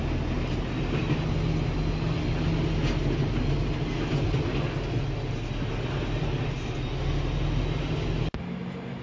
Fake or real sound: real